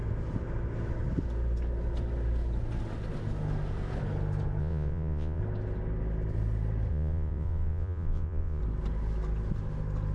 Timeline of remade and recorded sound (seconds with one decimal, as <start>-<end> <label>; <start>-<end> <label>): 0.0-4.6 recorded; 4.6-5.4 remade; 5.4-6.9 recorded; 6.9-8.6 remade; 8.6-10.1 recorded